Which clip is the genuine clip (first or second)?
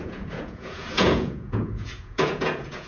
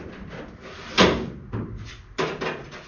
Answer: second